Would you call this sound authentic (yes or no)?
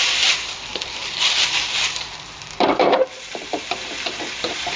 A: no